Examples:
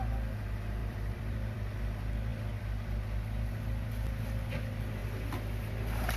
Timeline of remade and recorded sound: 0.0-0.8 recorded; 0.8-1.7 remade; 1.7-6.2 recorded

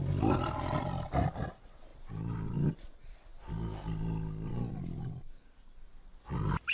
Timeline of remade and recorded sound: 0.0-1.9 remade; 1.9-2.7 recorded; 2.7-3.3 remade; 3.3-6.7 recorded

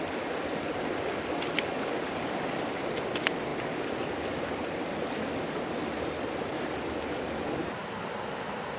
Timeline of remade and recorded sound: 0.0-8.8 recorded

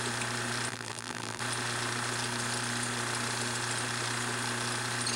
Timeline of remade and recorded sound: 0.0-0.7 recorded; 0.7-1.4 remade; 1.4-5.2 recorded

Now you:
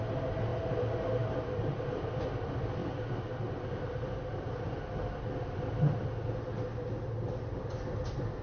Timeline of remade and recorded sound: 0.0-0.5 recorded; 0.5-2.0 remade; 2.0-2.8 recorded; 2.8-4.8 remade; 4.8-8.4 recorded

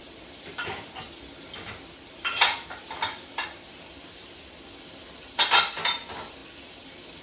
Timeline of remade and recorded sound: 0.0-7.2 remade

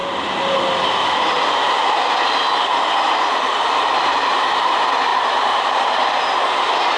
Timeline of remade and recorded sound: 0.0-4.2 recorded; 4.2-7.0 remade